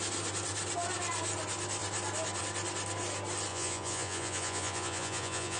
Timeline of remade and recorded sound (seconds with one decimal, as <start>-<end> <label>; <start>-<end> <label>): 0.0-3.5 recorded; 3.5-5.6 remade